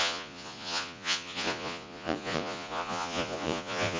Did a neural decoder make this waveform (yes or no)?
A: yes